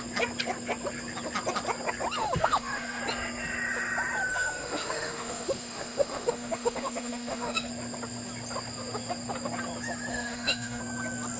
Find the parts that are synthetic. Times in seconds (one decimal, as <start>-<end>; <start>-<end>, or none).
2.2-3.0; 4.3-7.7; 10.1-10.8